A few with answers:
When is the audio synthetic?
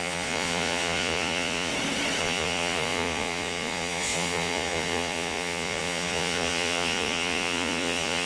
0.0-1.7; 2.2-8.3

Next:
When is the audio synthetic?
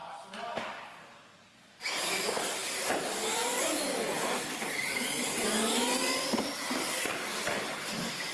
none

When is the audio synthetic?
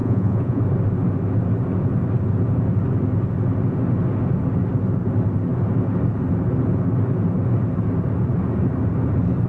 0.0-0.6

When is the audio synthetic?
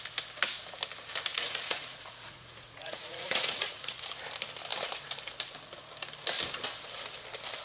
1.3-4.1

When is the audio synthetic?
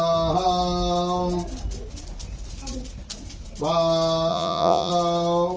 4.3-4.9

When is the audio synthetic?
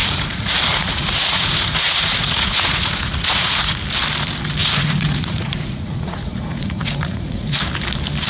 0.0-3.8; 4.6-7.6